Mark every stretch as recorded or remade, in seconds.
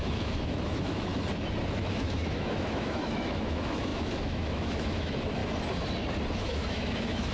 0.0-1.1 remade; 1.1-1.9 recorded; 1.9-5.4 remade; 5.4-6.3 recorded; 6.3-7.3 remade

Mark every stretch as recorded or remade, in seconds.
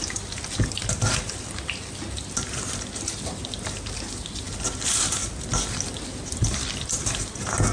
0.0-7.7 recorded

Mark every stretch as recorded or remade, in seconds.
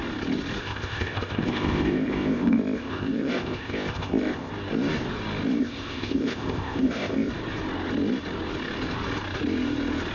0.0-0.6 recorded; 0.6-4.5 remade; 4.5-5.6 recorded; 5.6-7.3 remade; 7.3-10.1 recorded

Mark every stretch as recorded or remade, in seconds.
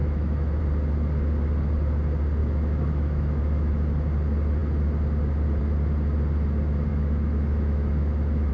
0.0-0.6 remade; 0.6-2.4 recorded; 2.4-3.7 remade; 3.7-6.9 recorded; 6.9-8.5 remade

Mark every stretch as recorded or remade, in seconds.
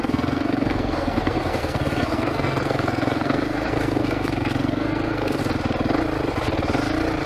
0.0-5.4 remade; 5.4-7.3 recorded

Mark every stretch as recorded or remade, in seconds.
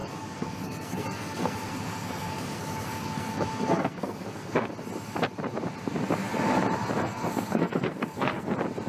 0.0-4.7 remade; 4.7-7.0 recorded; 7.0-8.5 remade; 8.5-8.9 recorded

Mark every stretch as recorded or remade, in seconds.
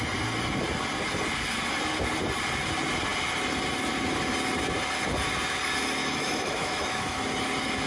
0.0-6.0 recorded; 6.0-7.2 remade; 7.2-7.9 recorded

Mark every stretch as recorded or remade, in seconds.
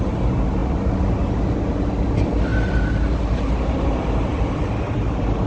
0.0-5.5 recorded